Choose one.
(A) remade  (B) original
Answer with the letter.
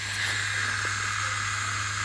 B